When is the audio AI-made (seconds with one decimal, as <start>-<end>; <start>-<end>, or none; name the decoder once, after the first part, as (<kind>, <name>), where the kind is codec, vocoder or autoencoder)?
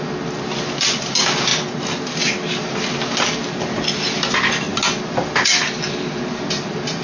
none